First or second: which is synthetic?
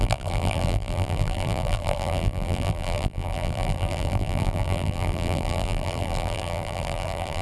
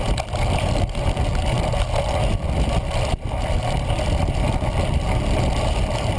first